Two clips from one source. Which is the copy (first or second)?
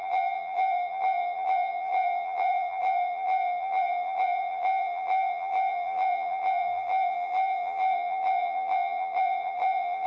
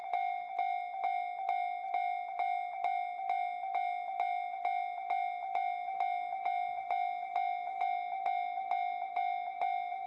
first